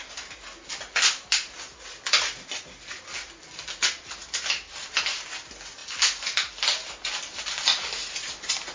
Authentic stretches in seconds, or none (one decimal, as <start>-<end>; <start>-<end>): 0.0-4.2; 5.0-8.7